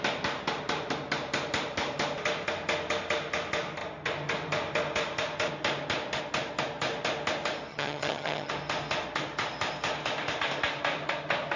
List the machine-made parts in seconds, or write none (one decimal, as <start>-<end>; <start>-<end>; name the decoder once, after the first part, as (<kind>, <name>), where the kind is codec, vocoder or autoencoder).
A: 7.7-8.5 (vocoder, HiFi-GAN)